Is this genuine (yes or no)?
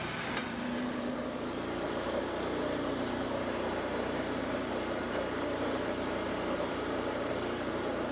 no